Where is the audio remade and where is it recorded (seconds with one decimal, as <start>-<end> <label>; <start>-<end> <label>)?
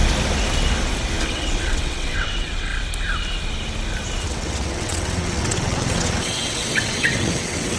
0.0-1.2 recorded; 1.2-2.7 remade; 2.7-4.2 recorded; 4.2-7.8 remade